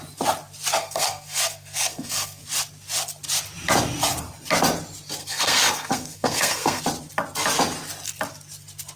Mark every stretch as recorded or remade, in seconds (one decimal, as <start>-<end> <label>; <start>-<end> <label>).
0.0-0.8 recorded; 0.8-2.4 remade; 2.4-5.2 recorded; 5.2-6.8 remade; 6.8-9.0 recorded